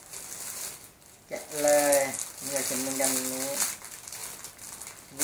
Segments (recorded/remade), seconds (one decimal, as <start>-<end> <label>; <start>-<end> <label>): 0.0-5.2 recorded